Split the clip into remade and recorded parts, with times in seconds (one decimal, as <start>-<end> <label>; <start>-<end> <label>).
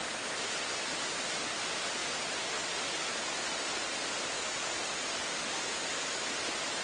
0.0-6.8 recorded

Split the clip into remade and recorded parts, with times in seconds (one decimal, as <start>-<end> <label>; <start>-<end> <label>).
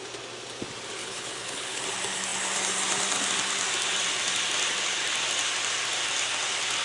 0.0-1.0 recorded; 1.0-1.8 remade; 1.8-6.8 recorded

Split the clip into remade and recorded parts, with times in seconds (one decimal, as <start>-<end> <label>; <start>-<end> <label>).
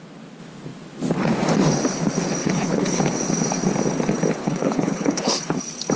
0.0-2.4 recorded; 2.4-3.0 remade; 3.0-4.4 recorded; 4.4-5.6 remade; 5.6-6.0 recorded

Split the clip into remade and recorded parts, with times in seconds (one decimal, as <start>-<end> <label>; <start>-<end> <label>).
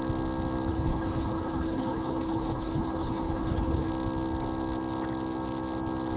0.0-0.7 recorded; 0.7-3.9 remade; 3.9-6.2 recorded